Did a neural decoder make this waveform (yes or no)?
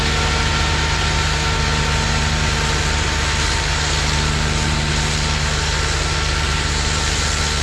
no